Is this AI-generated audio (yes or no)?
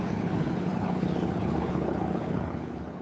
yes